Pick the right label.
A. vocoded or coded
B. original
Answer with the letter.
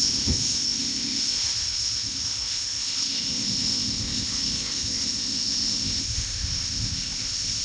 A